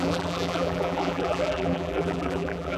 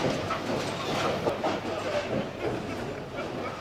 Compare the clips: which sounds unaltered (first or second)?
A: second